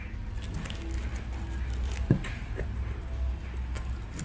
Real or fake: real